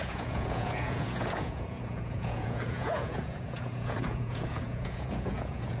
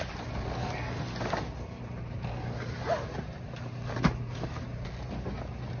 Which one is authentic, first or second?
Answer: second